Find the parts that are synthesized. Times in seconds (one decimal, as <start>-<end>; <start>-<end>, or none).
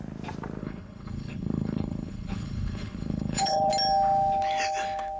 0.6-3.7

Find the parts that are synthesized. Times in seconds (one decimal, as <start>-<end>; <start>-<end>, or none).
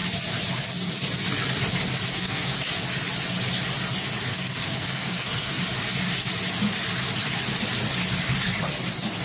2.1-2.6; 4.3-5.6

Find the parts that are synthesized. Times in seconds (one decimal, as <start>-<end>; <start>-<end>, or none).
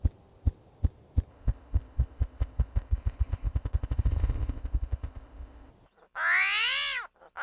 1.3-5.7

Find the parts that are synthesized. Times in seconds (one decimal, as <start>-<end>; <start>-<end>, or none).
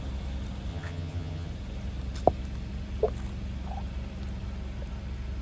0.7-1.5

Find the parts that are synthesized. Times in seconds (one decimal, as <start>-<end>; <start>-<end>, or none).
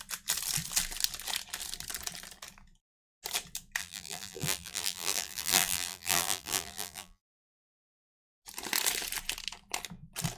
3.8-7.9